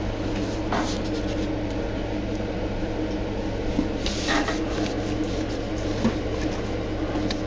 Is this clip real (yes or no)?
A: yes